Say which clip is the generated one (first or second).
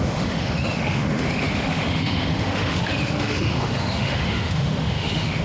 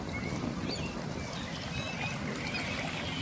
first